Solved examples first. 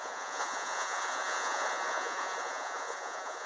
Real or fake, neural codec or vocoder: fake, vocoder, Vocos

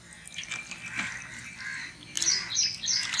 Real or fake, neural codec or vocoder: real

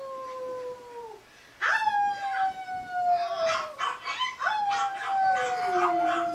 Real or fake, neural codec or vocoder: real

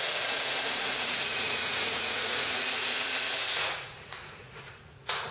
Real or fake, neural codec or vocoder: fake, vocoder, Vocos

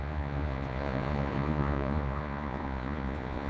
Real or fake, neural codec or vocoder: fake, vocoder, Vocos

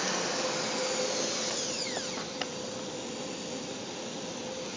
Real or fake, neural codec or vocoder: real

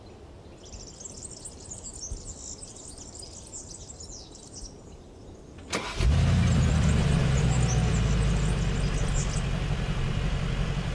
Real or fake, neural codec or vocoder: real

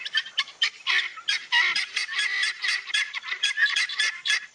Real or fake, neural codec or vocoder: fake, vocoder, BigVGAN v2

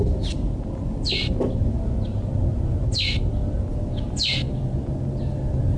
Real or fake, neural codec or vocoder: real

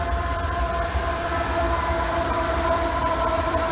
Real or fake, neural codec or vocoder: fake, vocoder, BigVGAN v2